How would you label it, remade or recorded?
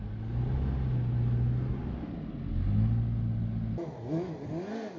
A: recorded